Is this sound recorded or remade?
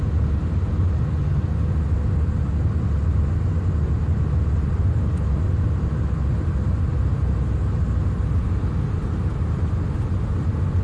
recorded